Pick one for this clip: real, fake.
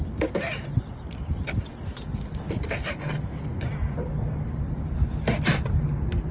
real